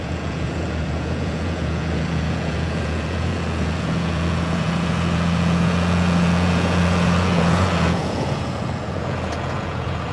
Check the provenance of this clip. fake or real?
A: fake